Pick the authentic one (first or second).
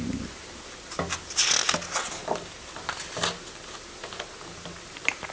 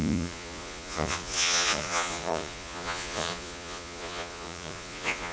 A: first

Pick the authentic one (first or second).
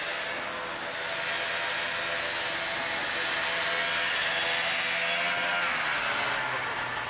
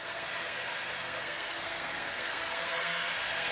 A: first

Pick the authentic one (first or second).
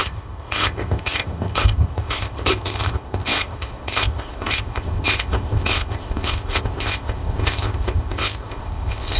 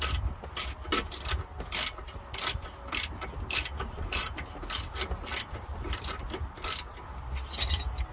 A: second